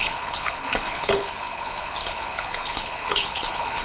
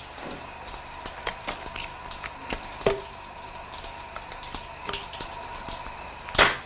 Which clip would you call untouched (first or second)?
second